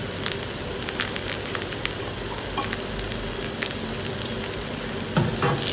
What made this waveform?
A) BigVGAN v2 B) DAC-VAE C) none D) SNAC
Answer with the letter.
C